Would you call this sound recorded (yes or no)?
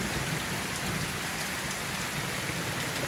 yes